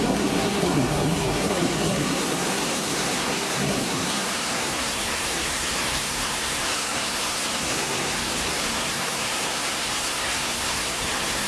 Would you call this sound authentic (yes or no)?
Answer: no